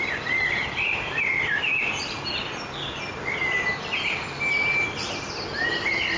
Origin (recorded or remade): recorded